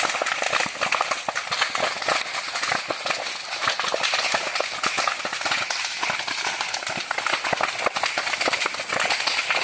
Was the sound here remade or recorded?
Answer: recorded